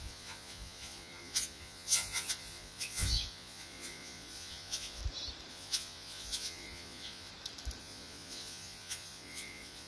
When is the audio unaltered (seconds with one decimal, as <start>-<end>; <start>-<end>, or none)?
5.0-5.5; 7.3-7.8